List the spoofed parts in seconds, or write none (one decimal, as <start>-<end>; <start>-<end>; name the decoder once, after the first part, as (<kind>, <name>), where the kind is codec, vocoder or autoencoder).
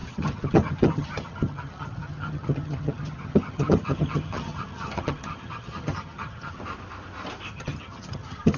0.0-6.6 (vocoder, HiFi-GAN); 7.5-8.6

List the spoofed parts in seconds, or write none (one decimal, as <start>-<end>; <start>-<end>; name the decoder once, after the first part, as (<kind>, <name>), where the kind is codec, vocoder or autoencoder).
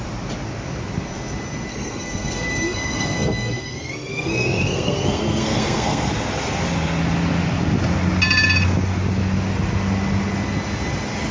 1.7-6.1 (codec, SNAC)